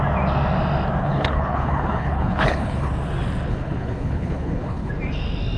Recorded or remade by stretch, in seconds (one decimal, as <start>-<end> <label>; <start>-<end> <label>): 0.0-1.0 recorded; 1.0-2.9 remade; 2.9-3.5 recorded; 3.5-4.9 remade; 4.9-5.6 recorded